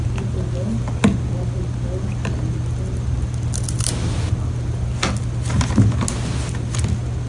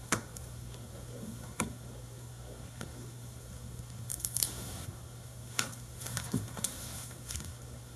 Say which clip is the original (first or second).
first